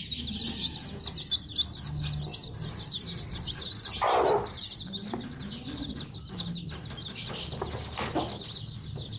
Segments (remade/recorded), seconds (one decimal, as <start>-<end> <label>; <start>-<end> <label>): 0.0-2.3 recorded; 2.3-4.9 remade; 4.9-9.2 recorded